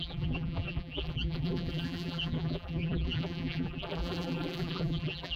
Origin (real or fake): fake